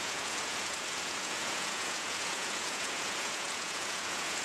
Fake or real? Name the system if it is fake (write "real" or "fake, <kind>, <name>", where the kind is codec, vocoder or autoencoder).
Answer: fake, vocoder, Vocos